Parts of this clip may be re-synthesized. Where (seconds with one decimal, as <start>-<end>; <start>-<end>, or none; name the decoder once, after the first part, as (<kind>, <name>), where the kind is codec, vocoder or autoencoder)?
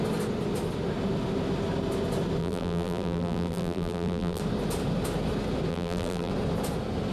2.4-4.4 (vocoder, BigVGAN v2); 5.7-6.3